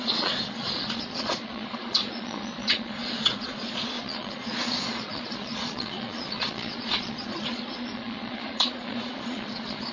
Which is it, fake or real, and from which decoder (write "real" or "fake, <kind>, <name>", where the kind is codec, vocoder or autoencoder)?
fake, vocoder, Vocos